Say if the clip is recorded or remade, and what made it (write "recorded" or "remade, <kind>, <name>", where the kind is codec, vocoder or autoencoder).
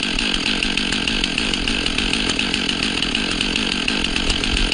recorded